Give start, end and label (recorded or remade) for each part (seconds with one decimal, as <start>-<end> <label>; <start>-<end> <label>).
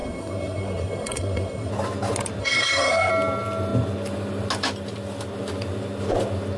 0.0-1.7 remade; 1.7-2.4 recorded; 2.4-3.1 remade; 3.1-6.6 recorded